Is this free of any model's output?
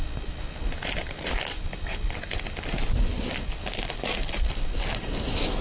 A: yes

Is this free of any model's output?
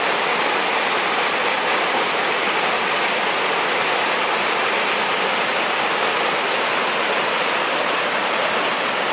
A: yes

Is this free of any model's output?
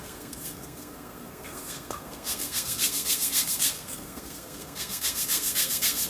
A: no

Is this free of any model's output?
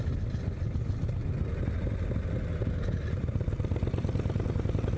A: yes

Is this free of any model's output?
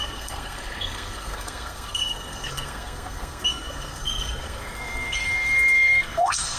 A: no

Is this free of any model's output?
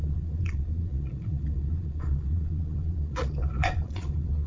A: no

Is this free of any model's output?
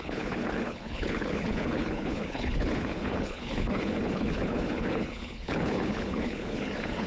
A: no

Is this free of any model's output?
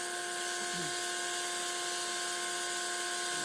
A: yes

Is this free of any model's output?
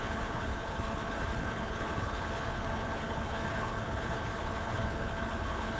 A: no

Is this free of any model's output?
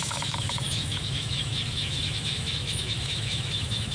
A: no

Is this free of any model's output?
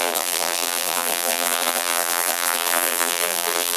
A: no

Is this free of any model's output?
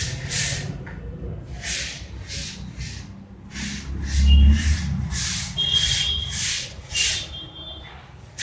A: yes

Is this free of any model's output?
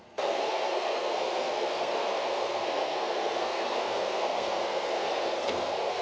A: no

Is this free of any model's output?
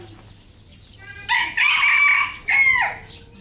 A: yes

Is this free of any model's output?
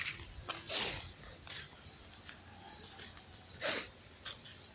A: yes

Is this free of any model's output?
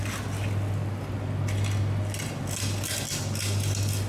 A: yes